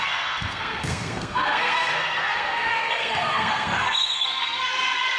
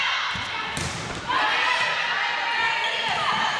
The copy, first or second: first